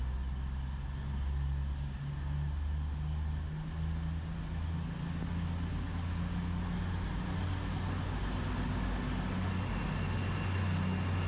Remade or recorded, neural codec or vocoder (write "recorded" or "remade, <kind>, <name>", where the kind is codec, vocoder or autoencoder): recorded